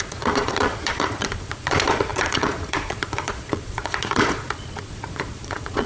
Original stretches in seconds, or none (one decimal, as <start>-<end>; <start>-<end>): none